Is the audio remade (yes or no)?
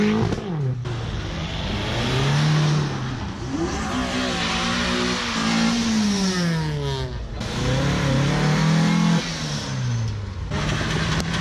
no